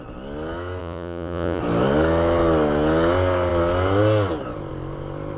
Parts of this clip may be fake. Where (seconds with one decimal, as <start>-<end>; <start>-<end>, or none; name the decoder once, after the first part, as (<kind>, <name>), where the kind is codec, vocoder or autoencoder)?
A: 0.8-1.6 (vocoder, Vocos)